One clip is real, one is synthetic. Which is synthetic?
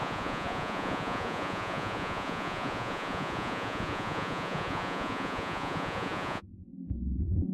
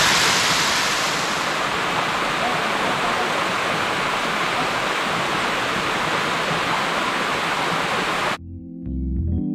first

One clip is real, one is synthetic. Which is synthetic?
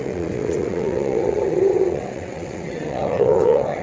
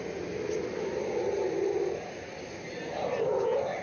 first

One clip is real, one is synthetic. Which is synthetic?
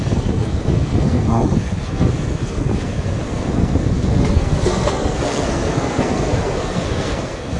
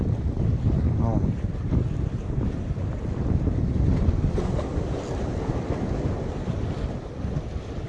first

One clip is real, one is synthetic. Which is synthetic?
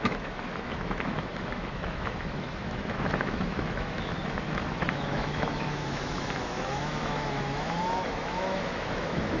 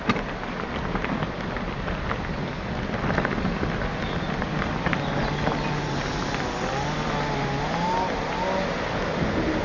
first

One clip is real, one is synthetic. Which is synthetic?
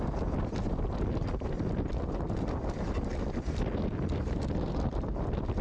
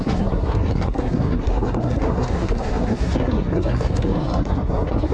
second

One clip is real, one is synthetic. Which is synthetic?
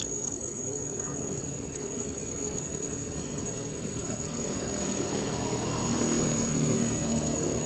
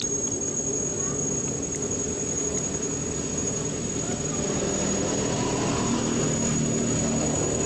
first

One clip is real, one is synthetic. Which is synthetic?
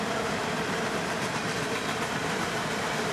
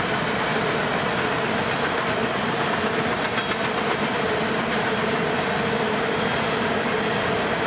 first